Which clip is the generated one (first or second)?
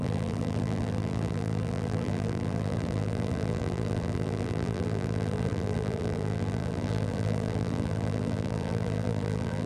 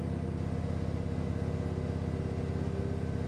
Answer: first